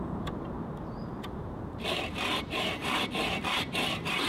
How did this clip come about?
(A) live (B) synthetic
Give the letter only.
B